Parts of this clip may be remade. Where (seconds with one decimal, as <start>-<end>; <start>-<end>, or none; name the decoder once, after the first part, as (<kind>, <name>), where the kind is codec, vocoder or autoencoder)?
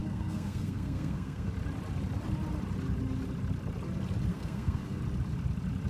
0.0-1.5 (codec, SNAC); 4.3-5.0